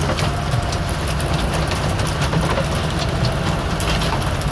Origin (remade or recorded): recorded